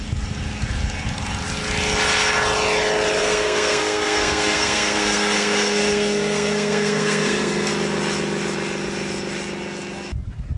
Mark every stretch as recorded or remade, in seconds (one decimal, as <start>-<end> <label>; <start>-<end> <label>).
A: 0.0-3.2 recorded; 3.2-7.7 remade; 7.7-10.6 recorded